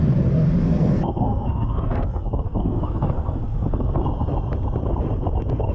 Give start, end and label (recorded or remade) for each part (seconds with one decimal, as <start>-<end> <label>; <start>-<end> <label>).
0.0-0.6 recorded; 0.6-4.0 remade; 4.0-5.7 recorded